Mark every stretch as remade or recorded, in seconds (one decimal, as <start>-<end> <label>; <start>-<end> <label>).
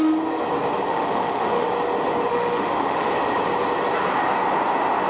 0.0-0.9 recorded; 0.9-1.7 remade; 1.7-2.3 recorded; 2.3-3.1 remade; 3.1-5.1 recorded